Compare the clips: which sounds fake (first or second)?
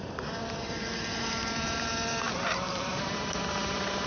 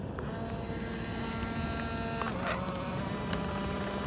first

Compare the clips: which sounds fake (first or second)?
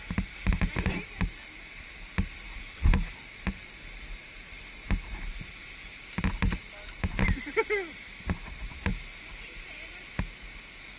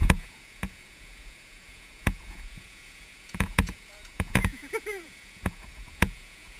second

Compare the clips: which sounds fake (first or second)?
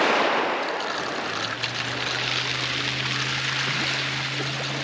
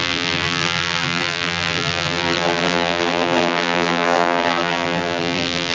second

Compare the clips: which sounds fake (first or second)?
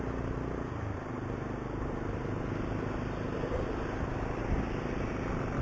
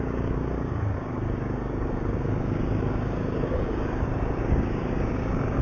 second